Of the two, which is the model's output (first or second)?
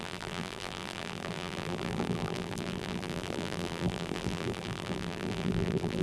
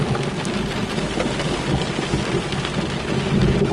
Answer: first